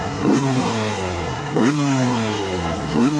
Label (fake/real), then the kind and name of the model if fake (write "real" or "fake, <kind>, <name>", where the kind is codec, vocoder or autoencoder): fake, codec, SNAC